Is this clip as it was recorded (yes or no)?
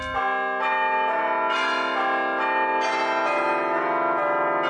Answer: yes